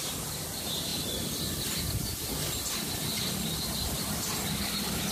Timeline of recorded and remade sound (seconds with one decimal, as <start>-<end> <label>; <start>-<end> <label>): 0.0-5.1 recorded